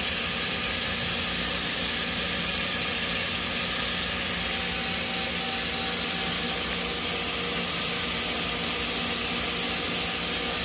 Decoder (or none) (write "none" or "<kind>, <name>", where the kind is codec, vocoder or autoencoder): none